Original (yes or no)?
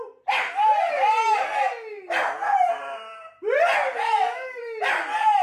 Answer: yes